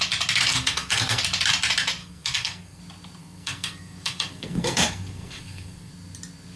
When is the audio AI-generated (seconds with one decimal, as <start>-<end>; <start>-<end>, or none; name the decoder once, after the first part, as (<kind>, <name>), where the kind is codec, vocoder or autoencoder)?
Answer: 0.5-1.2 (codec, SNAC); 2.0-2.8; 3.2-5.9